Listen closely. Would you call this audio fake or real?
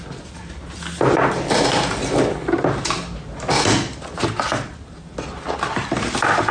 real